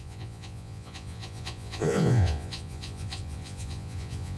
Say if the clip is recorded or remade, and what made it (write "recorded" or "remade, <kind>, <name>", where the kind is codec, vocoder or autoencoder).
remade, vocoder, Vocos